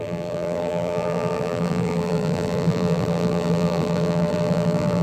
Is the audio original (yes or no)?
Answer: no